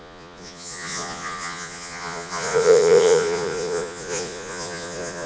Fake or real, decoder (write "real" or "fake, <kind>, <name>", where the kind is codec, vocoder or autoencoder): fake, vocoder, Vocos